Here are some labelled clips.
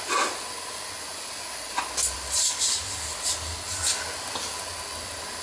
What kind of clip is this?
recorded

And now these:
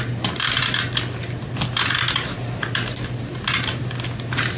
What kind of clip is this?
recorded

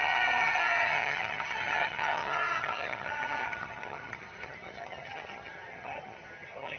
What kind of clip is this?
remade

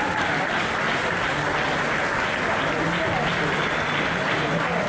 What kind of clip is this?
recorded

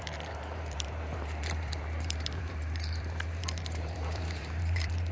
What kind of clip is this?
remade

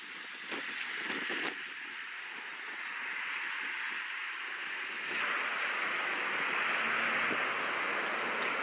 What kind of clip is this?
recorded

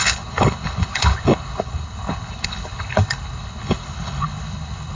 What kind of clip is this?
remade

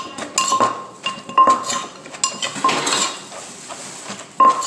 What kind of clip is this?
recorded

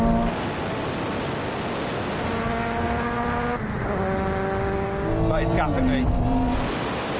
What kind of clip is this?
recorded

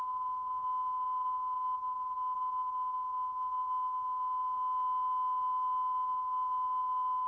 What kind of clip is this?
recorded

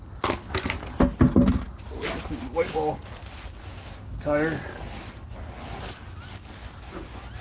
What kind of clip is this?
recorded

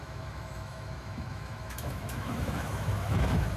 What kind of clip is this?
remade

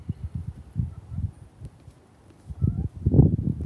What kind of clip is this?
recorded